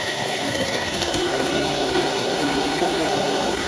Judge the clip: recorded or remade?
remade